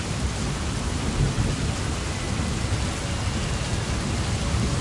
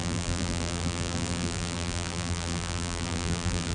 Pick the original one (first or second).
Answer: first